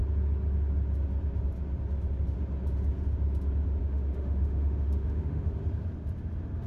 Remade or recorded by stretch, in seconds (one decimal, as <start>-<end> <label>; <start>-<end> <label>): 0.0-3.8 recorded; 3.8-5.5 remade; 5.5-6.7 recorded